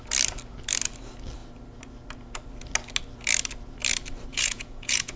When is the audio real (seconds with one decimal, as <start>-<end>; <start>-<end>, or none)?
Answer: 0.0-4.3